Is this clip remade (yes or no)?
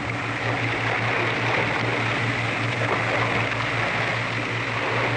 no